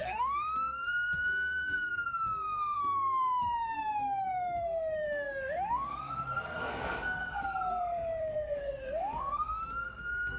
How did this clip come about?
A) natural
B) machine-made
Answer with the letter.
B